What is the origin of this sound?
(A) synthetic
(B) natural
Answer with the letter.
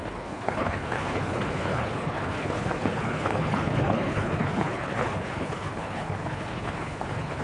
A